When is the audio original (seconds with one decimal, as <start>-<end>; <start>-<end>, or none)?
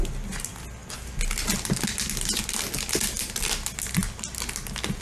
0.0-5.0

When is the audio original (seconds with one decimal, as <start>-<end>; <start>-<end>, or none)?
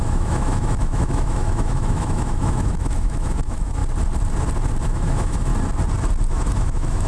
3.8-4.8; 5.5-6.3